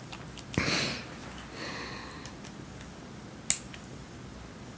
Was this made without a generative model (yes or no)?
yes